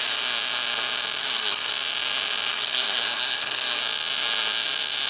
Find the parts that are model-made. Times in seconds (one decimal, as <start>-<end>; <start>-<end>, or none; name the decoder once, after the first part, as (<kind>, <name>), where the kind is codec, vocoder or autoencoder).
1.2-1.7 (codec, SNAC); 2.5-3.8